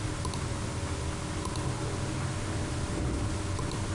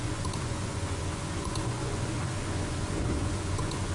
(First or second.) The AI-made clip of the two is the second